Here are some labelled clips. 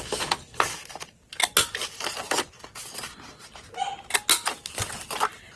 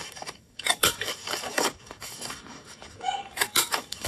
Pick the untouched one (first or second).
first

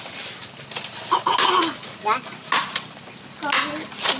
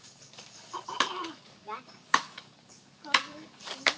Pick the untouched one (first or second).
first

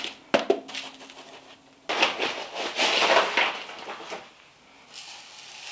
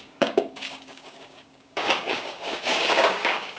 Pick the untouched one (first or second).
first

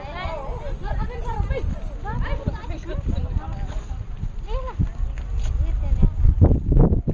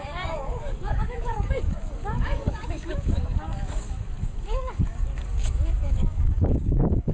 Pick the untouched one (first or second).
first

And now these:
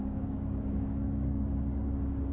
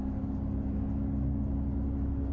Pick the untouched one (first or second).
second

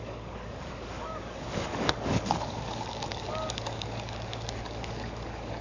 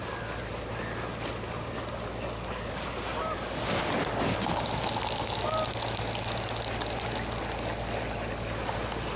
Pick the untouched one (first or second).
second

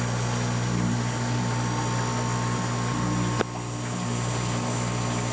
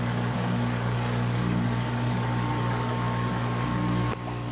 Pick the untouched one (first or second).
first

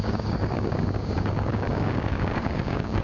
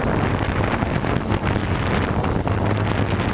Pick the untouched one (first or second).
second